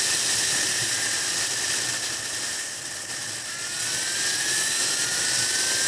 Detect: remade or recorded recorded